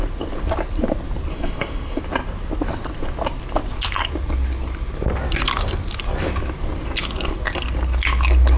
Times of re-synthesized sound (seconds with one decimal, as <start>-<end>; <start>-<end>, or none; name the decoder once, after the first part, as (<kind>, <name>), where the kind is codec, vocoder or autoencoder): 1.3-2.0 (codec, SNAC)